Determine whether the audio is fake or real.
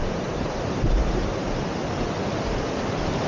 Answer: fake